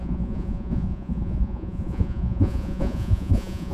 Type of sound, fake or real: fake